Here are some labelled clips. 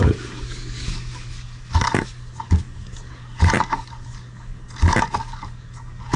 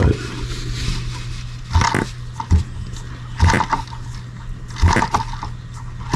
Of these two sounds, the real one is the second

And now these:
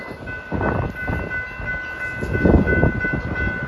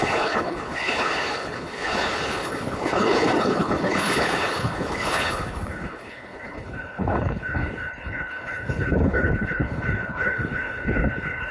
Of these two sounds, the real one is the first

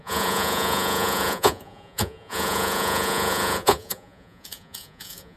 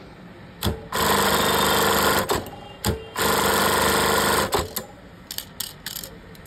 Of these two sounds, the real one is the second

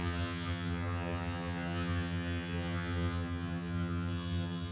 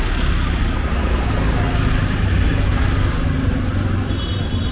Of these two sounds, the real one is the second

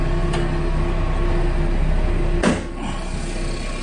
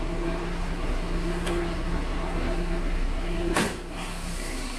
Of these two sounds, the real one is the first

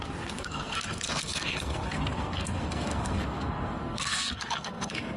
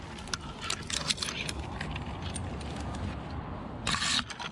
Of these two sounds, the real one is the second